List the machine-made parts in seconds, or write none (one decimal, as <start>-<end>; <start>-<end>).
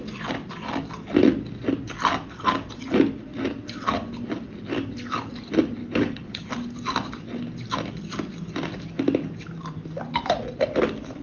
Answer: 5.8-6.5